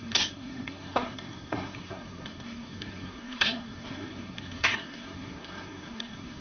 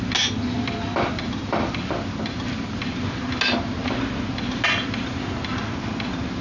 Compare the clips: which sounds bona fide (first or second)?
second